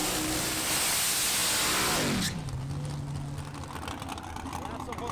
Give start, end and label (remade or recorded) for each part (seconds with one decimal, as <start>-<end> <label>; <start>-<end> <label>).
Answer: 0.0-0.7 remade; 0.7-5.1 recorded